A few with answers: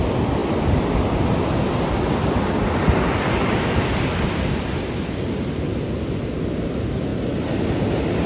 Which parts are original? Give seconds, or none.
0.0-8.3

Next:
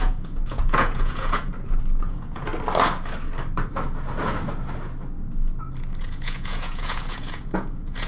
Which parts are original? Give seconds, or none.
1.5-2.0; 2.5-6.0

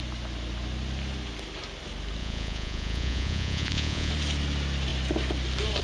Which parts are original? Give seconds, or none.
0.0-2.2; 4.1-5.8

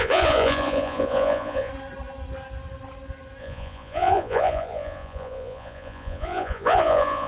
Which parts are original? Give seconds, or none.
1.7-3.4